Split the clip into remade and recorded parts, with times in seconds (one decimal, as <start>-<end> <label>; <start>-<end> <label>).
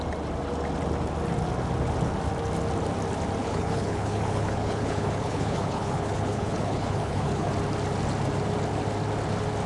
0.0-3.4 recorded; 3.4-7.5 remade; 7.5-9.7 recorded